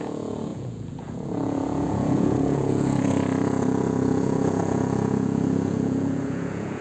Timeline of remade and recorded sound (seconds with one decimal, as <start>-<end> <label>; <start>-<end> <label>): 0.0-6.8 remade